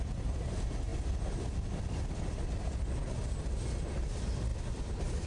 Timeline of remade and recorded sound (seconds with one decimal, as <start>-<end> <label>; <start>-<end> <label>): 0.0-4.5 recorded; 4.5-5.3 remade